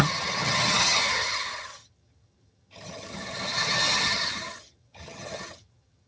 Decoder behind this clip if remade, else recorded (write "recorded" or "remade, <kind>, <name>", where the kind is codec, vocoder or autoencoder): remade, vocoder, HiFi-GAN